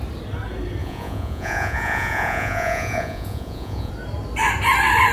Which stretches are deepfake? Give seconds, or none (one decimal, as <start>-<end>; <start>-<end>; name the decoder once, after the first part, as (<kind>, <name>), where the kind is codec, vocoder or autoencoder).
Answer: 0.8-3.9 (vocoder, Vocos)